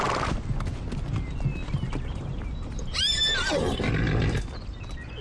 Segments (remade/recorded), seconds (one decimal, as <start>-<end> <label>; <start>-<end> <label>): 0.0-1.6 recorded; 1.6-3.9 remade; 3.9-5.2 recorded